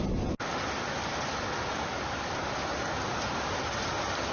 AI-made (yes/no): no